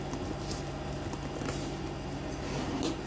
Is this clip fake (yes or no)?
no